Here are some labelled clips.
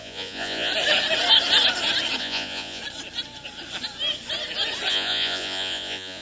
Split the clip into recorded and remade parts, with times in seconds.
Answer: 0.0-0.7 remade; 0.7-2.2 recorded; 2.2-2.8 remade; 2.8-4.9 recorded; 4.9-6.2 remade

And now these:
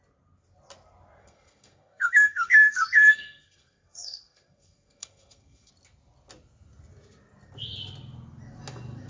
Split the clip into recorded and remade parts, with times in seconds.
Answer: 0.0-1.2 recorded; 1.2-5.7 remade; 5.7-9.1 recorded

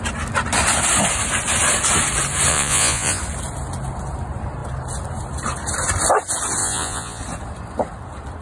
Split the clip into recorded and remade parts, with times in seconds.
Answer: 0.0-2.5 recorded; 2.5-3.2 remade; 3.2-6.6 recorded; 6.6-7.2 remade; 7.2-8.4 recorded

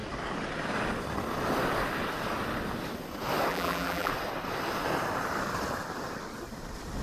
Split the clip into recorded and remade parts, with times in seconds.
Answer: 0.0-3.5 recorded; 3.5-4.1 remade; 4.1-7.0 recorded